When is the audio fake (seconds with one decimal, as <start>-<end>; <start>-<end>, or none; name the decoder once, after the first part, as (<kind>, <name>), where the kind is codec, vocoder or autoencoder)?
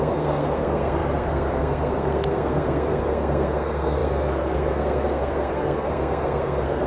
0.0-6.9 (codec, SNAC)